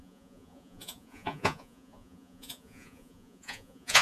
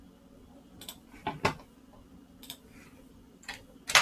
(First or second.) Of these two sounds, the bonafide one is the second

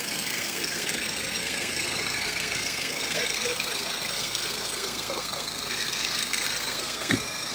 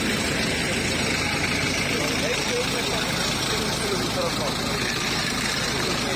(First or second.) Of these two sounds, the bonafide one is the second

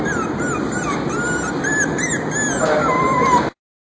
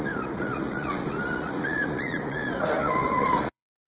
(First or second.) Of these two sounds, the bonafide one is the first